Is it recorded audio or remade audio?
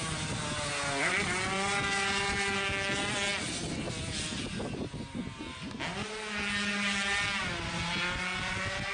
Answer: recorded